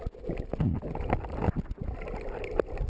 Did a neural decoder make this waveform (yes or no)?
no